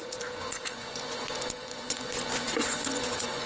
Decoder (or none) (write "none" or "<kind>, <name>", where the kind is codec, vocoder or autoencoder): vocoder, Vocos